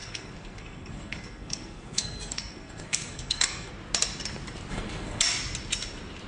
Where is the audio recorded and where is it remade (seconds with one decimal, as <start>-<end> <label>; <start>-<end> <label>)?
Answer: 0.0-3.7 remade; 3.7-4.7 recorded; 4.7-5.2 remade; 5.2-6.3 recorded